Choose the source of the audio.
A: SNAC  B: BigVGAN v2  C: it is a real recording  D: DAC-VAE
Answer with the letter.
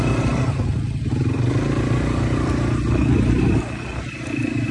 C